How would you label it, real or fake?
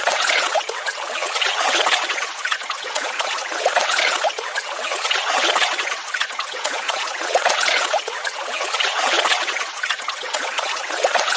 fake